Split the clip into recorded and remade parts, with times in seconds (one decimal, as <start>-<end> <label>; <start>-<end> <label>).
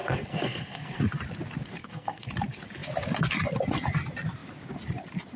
0.0-1.0 remade; 1.0-1.8 recorded; 1.8-2.3 remade; 2.3-5.4 recorded